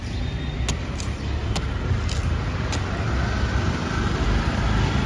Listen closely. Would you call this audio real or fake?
real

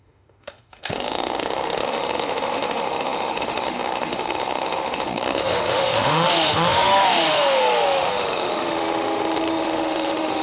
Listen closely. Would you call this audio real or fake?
fake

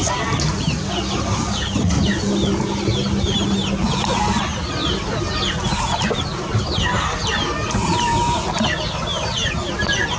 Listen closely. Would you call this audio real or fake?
real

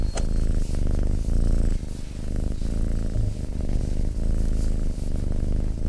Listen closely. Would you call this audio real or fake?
real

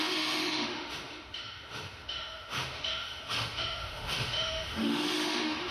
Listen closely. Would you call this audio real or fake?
fake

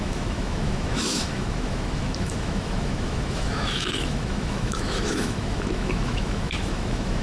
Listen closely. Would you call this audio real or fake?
fake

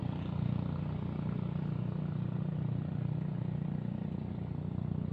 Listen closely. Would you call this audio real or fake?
real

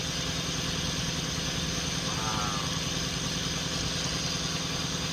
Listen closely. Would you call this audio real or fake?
real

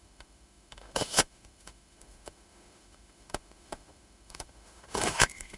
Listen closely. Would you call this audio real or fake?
fake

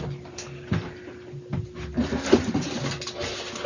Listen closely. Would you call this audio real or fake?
real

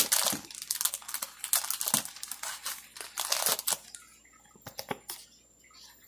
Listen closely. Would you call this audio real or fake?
real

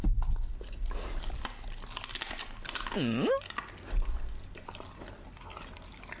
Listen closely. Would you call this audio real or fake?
real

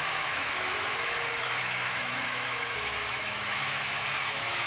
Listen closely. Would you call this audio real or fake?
fake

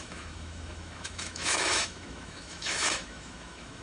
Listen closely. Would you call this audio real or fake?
fake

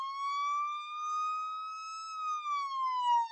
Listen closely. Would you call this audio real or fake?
fake